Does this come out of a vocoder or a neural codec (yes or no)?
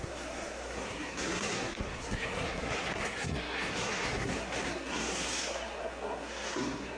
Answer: yes